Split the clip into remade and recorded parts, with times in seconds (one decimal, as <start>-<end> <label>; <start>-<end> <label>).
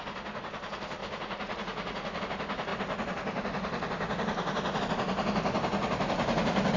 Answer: 0.0-1.0 recorded; 1.0-2.2 remade; 2.2-6.8 recorded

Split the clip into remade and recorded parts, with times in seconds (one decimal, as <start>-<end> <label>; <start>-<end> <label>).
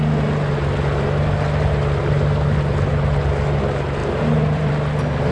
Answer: 0.0-4.0 recorded; 4.0-4.7 remade; 4.7-5.3 recorded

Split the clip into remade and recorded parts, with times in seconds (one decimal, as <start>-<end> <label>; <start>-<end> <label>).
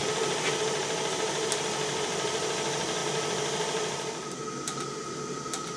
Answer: 0.0-5.8 recorded